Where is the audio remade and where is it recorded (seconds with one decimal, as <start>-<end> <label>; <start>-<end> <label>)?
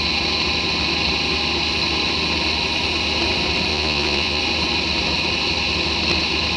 0.0-3.7 recorded; 3.7-4.4 remade; 4.4-6.6 recorded